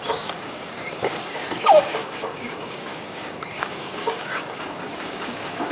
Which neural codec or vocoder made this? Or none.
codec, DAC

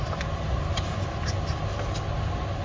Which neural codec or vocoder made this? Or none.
none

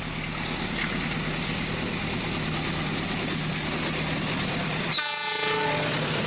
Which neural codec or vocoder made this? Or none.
none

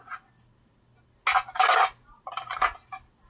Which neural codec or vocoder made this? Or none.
none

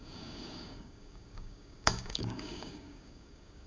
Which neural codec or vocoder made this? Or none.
codec, DAC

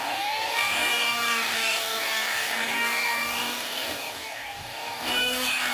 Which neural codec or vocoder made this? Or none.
codec, DAC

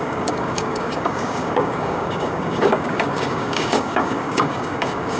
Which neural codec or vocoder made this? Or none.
codec, DAC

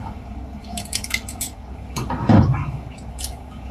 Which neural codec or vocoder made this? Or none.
codec, DAC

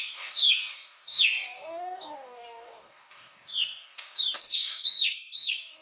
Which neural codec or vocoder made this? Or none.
codec, DAC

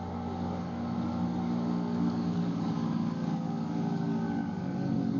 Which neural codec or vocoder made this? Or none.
codec, DAC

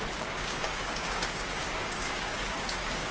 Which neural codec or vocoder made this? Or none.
codec, DAC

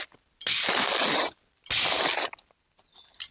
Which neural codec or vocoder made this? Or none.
none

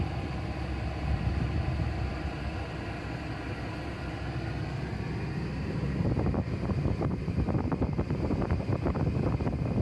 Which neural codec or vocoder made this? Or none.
none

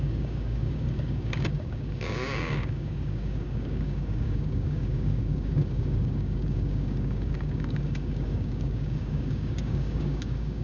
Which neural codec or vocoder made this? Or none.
codec, DAC